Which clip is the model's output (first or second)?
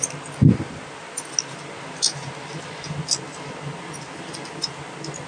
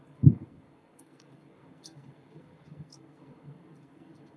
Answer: second